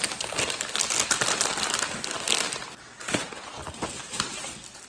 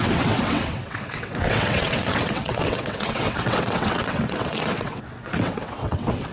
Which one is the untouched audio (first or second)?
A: first